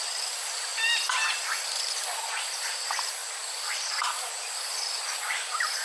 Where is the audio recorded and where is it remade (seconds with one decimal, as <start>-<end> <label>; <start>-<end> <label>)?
0.0-3.2 recorded; 3.2-4.3 remade; 4.3-5.8 recorded

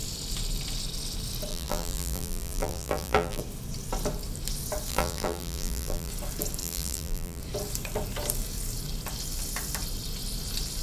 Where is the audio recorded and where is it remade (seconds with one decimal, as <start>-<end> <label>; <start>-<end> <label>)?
0.0-1.5 recorded; 1.5-3.4 remade; 3.4-4.9 recorded; 4.9-6.1 remade; 6.1-6.6 recorded; 6.6-7.4 remade; 7.4-10.8 recorded

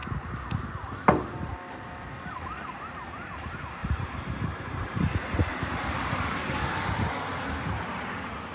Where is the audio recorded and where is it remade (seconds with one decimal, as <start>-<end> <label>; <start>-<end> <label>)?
0.0-3.8 recorded; 3.8-5.1 remade; 5.1-8.5 recorded

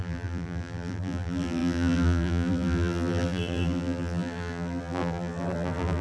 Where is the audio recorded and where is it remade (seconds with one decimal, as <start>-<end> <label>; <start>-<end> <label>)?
0.0-6.0 remade

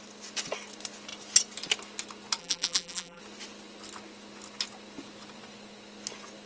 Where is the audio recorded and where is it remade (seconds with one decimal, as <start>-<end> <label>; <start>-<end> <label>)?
0.0-2.4 recorded; 2.4-3.2 remade; 3.2-6.5 recorded